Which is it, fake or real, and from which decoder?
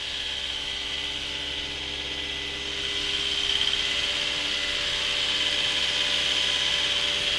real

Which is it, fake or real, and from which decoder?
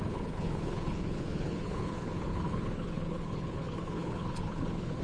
fake, codec, HILCodec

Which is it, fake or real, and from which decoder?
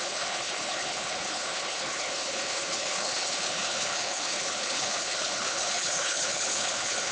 fake, codec, HILCodec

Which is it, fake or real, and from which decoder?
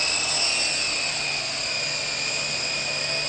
real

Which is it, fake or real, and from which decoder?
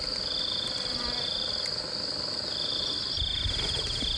real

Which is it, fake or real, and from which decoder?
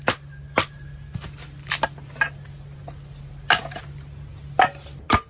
real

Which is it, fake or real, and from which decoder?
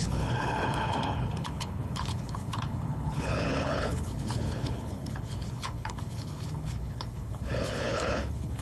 fake, codec, HILCodec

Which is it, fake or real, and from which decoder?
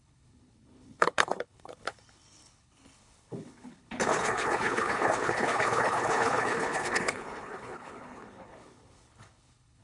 fake, codec, HILCodec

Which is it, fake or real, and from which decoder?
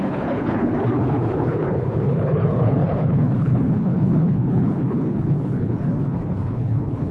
fake, codec, HILCodec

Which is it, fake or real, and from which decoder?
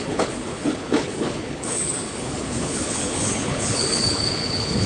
fake, codec, HILCodec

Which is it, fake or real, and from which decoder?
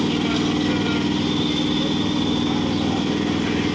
real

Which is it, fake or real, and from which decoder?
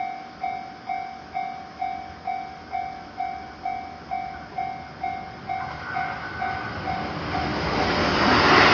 real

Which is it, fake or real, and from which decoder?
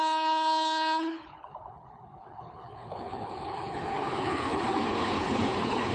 fake, codec, HILCodec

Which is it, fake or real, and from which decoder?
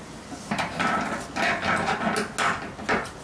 real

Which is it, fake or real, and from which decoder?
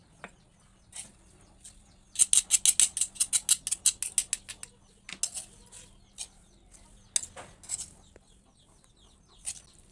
real